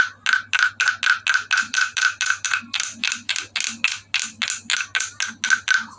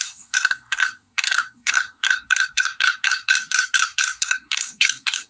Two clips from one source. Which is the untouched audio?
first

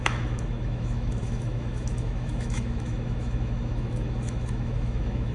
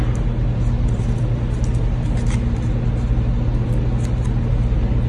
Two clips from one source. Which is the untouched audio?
second